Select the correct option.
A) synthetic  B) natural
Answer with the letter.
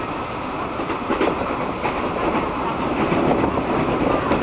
B